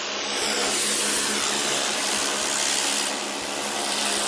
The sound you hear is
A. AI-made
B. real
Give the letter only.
B